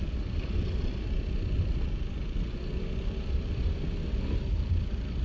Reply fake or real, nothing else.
real